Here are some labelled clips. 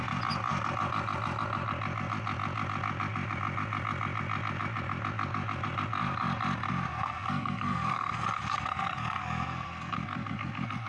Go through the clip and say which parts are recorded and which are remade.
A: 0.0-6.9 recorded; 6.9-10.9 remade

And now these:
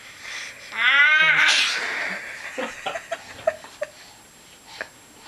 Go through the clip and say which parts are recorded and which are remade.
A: 0.0-5.3 recorded

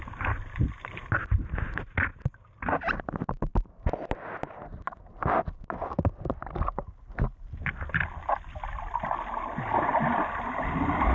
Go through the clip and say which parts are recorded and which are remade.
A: 0.0-11.1 recorded

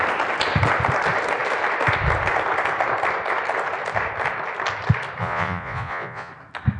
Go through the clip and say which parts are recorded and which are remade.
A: 0.0-5.2 recorded; 5.2-6.3 remade; 6.3-6.8 recorded

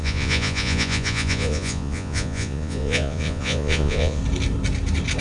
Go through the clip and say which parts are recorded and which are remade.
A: 0.0-4.2 remade; 4.2-5.2 recorded

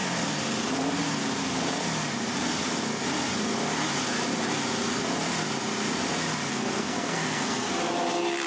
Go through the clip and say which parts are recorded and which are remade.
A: 0.0-6.5 recorded; 6.5-7.7 remade; 7.7-8.5 recorded

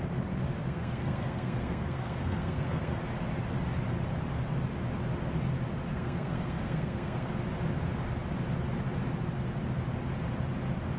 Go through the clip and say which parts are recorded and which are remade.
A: 0.0-0.6 recorded; 0.6-3.0 remade; 3.0-5.9 recorded; 5.9-7.3 remade; 7.3-11.0 recorded

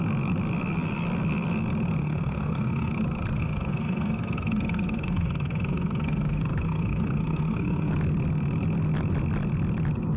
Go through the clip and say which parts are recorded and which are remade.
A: 0.0-2.0 recorded; 2.0-2.9 remade; 2.9-3.4 recorded; 3.4-7.9 remade; 7.9-10.2 recorded